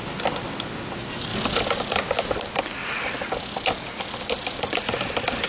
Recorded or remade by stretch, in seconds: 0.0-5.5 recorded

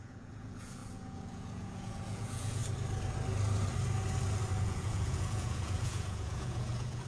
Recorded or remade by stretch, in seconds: 0.0-2.6 remade; 2.6-4.6 recorded; 4.6-7.1 remade

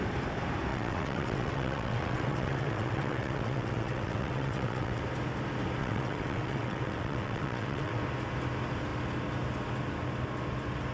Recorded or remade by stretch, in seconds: 0.0-0.7 recorded; 0.7-5.0 remade; 5.0-5.8 recorded; 5.8-8.0 remade; 8.0-10.9 recorded

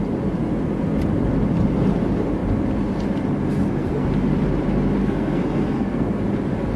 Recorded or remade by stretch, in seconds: 0.0-3.6 recorded; 3.6-4.1 remade; 4.1-5.0 recorded; 5.0-6.2 remade; 6.2-6.8 recorded